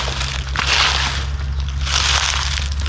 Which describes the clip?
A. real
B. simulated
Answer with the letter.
A